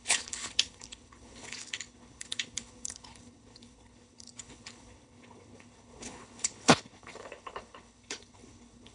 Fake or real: fake